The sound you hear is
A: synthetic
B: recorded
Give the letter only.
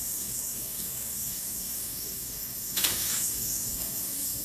A